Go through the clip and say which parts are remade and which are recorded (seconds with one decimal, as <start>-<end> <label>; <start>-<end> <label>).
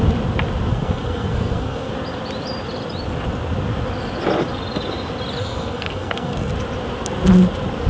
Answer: 0.0-0.7 recorded; 0.7-1.9 remade; 1.9-5.4 recorded; 5.4-6.5 remade; 6.5-7.9 recorded